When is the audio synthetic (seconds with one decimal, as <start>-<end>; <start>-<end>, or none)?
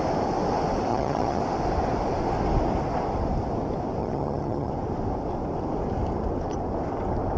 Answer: 0.9-1.4; 4.0-4.7